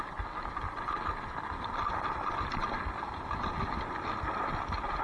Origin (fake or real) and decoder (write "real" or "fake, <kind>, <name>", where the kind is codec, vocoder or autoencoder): real